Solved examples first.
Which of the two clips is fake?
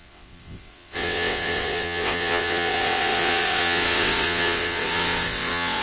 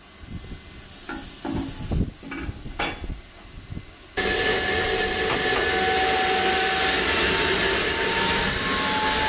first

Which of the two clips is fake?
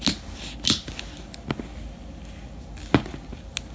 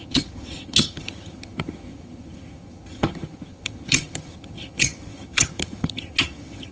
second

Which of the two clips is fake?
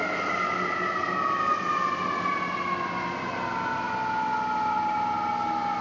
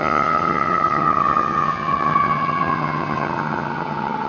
second